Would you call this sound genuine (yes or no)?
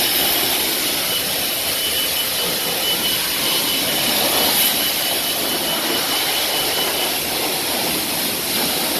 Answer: yes